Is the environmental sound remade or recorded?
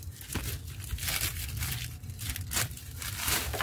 recorded